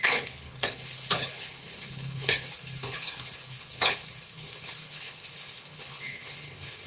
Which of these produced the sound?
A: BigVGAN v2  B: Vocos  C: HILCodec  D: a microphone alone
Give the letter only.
C